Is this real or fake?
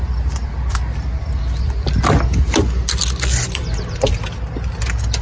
real